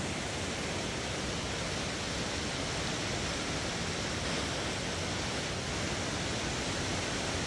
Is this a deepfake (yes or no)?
no